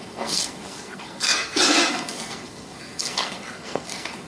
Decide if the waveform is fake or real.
fake